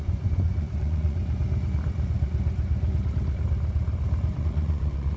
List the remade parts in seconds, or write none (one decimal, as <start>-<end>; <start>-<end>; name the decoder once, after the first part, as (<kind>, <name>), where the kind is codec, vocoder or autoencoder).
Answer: 0.0-1.2 (vocoder, Vocos); 4.3-5.2